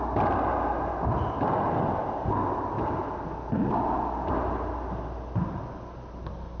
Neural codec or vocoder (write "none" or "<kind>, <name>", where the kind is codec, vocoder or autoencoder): none